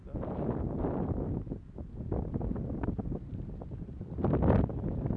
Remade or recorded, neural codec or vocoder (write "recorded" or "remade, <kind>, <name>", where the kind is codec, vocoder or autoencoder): recorded